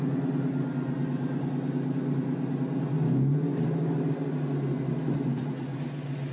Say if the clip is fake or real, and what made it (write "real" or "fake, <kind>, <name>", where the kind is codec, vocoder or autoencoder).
real